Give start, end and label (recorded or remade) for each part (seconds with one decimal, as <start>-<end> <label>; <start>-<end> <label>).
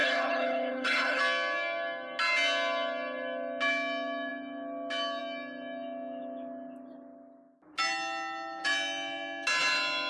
0.0-1.2 remade; 1.2-10.1 recorded